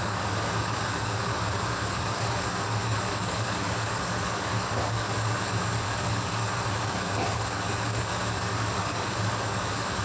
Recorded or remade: remade